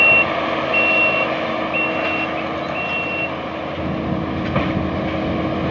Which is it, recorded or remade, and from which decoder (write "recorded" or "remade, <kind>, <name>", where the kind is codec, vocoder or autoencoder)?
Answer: recorded